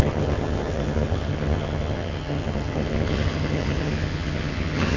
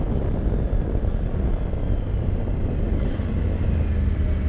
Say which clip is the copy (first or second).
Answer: first